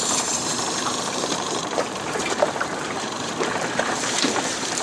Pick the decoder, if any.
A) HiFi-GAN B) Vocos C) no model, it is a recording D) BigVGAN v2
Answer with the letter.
D